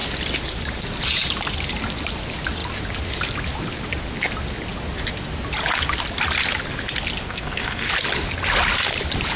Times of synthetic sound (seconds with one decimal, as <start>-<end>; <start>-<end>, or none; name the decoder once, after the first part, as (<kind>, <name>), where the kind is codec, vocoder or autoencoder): 7.2-7.9 (codec, SNAC)